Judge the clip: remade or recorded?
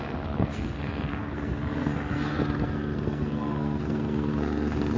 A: remade